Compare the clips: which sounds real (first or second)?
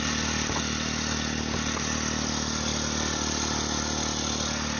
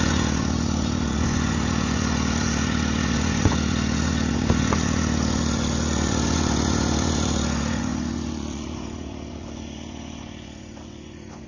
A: first